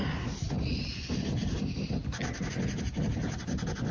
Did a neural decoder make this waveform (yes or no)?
no